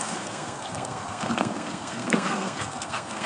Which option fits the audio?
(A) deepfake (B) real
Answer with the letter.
A